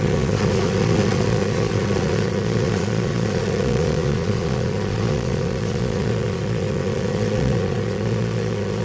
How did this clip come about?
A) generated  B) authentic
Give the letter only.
A